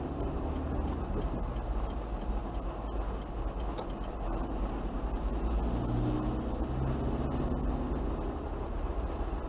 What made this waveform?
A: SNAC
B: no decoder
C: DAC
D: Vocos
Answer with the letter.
B